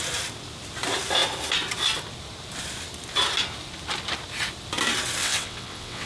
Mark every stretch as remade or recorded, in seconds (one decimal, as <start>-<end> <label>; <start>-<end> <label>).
0.0-5.2 recorded; 5.2-6.1 remade

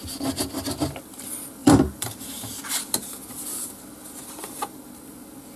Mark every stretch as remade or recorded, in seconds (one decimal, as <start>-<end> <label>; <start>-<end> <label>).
0.0-1.6 recorded; 1.6-2.6 remade; 2.6-5.6 recorded